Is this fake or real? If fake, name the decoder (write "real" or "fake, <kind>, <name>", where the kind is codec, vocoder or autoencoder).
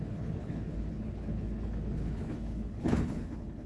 fake, codec, HILCodec